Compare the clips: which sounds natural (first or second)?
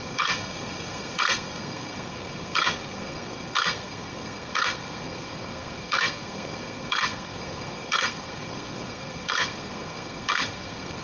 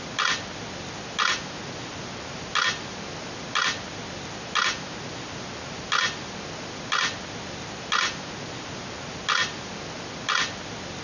second